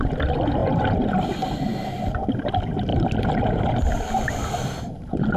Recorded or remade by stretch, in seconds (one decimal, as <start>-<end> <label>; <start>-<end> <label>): 0.0-5.4 recorded